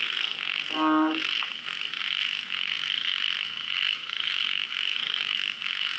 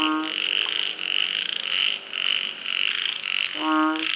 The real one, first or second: second